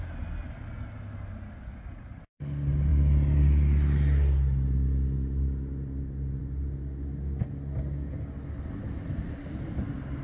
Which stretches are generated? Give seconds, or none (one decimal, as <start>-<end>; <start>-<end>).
none